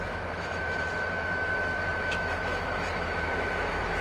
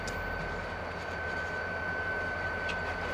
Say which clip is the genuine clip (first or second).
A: second